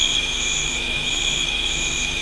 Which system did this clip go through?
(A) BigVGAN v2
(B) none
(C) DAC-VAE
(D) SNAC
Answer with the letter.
C